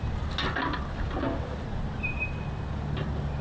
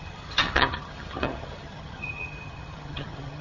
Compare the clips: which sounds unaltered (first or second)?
first